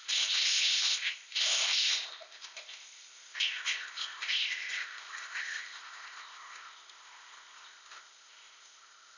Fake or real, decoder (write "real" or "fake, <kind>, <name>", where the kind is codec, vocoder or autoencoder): fake, codec, ZipCodec